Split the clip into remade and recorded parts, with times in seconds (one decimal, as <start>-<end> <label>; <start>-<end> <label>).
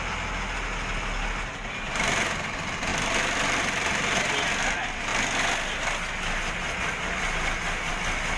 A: 0.0-8.4 recorded